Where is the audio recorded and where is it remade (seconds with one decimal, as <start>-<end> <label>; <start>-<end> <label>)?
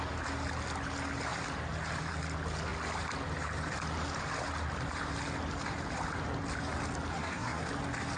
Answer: 0.0-7.1 recorded; 7.1-7.7 remade; 7.7-8.2 recorded